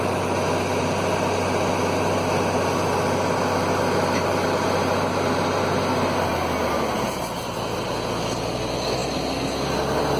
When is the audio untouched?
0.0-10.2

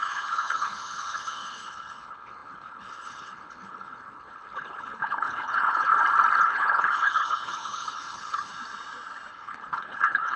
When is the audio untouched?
5.9-6.4; 8.5-9.3

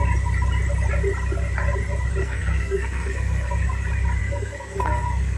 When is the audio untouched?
0.0-2.2; 3.5-4.2

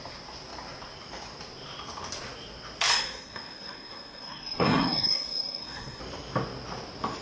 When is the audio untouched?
0.0-2.9; 6.0-7.2

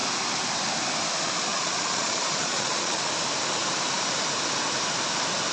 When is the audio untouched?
0.0-1.5; 3.1-5.5